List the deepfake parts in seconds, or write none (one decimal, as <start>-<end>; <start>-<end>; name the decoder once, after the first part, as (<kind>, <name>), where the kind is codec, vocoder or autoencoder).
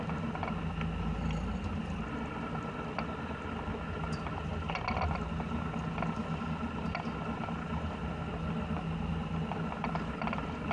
none